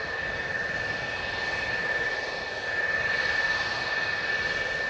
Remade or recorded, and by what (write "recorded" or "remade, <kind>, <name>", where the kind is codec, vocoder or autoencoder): recorded